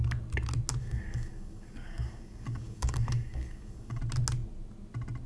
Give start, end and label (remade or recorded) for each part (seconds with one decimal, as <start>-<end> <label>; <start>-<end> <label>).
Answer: 0.0-0.8 recorded; 0.8-4.0 remade; 4.0-5.3 recorded